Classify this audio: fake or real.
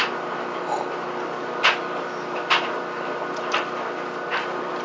real